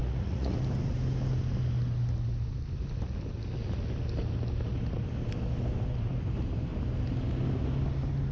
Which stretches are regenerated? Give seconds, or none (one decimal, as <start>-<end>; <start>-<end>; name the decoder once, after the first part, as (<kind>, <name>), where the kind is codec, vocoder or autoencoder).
0.0-0.6 (vocoder, Vocos)